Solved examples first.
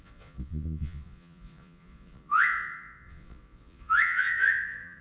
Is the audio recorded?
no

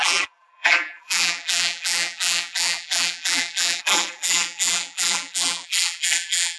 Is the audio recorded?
no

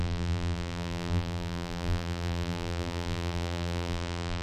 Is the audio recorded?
no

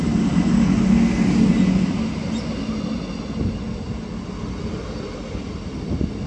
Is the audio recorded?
yes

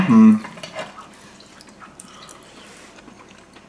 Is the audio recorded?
no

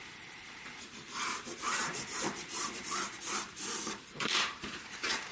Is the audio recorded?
no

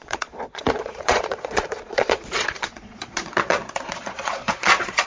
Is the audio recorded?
no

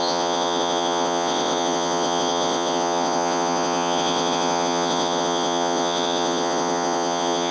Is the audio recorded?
no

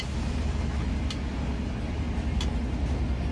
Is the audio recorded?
yes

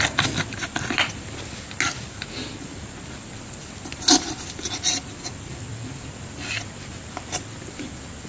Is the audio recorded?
yes